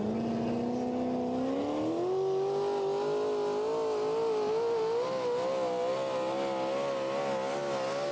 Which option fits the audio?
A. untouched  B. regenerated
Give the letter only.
A